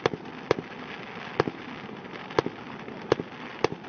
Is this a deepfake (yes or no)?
no